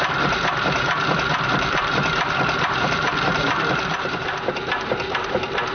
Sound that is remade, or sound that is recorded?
remade